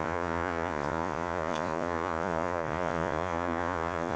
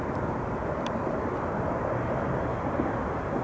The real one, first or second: second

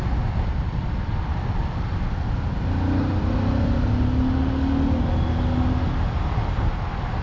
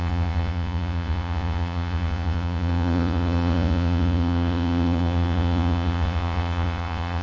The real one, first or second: first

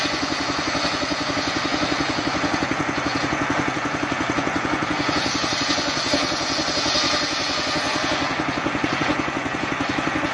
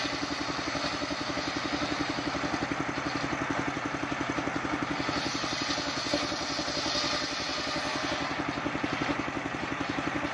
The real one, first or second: second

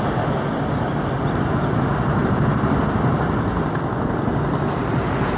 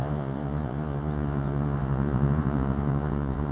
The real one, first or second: first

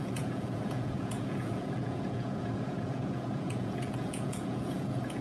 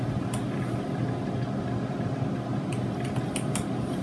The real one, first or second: second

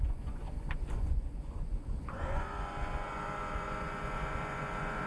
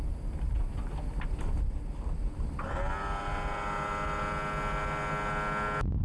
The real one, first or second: second